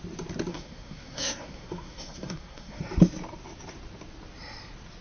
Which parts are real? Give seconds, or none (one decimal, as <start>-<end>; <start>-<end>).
0.0-0.5; 2.8-5.0